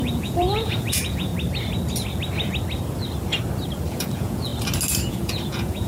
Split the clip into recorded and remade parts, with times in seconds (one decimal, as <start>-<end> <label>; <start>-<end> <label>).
0.0-1.3 remade; 1.3-3.9 recorded; 3.9-4.5 remade; 4.5-5.1 recorded; 5.1-5.9 remade